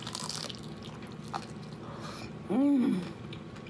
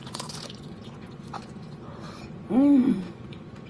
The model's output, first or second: second